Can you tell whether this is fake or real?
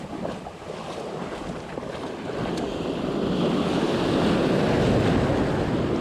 real